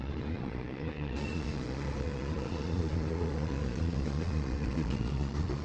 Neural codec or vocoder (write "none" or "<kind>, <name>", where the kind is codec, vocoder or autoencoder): vocoder, Vocos